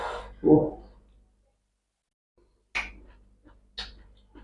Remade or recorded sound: recorded